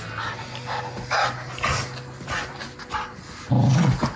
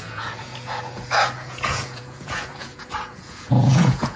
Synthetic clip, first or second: second